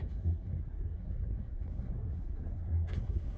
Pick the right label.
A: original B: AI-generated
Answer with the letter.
B